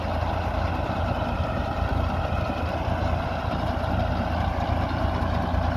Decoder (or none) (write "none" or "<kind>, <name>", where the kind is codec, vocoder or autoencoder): none